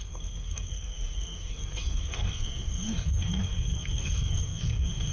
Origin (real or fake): fake